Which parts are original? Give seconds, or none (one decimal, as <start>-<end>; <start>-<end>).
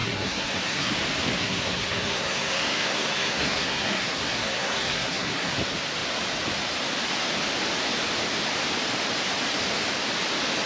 0.9-1.4; 5.5-10.7